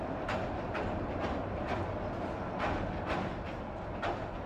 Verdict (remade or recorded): recorded